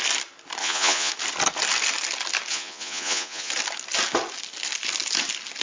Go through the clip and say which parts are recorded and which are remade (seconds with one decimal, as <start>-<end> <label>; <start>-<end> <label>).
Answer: 0.0-0.6 recorded; 0.6-1.1 remade; 1.1-2.5 recorded; 2.5-3.5 remade; 3.5-5.6 recorded